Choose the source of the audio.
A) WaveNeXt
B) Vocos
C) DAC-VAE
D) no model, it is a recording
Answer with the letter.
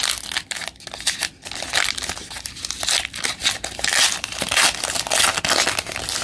D